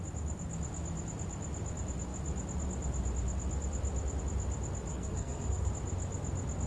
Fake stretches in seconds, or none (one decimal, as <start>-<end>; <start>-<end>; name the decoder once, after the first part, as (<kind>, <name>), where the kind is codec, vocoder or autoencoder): 4.9-5.7 (codec, SNAC)